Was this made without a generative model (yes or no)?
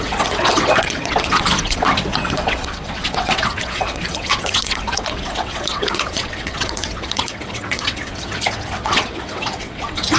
no